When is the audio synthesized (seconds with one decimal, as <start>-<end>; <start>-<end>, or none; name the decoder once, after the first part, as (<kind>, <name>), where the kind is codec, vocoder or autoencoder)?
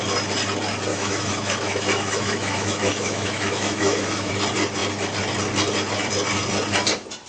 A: 0.9-4.3 (autoencoder, DAC-VAE)